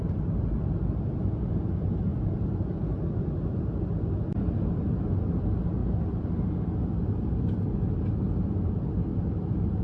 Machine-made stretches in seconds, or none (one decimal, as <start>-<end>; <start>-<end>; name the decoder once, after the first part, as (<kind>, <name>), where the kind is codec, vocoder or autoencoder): 9.1-9.8 (vocoder, BigVGAN v2)